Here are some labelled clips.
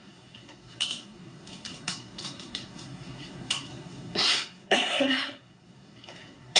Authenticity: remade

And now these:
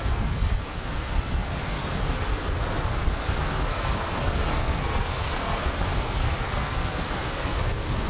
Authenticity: remade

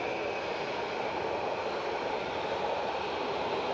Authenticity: recorded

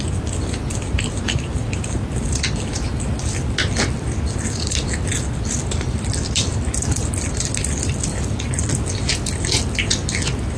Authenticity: recorded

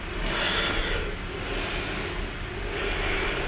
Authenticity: recorded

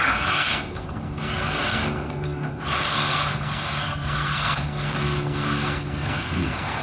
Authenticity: remade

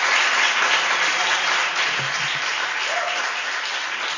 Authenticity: recorded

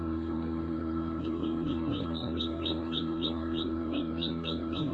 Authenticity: remade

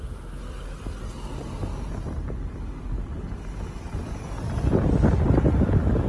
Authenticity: recorded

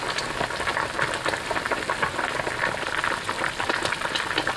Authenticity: recorded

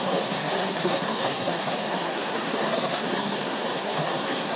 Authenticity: remade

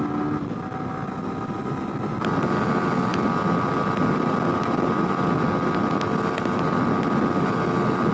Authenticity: recorded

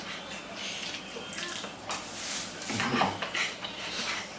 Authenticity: recorded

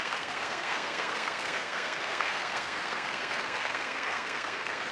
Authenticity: remade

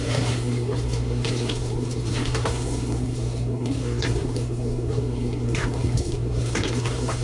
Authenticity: remade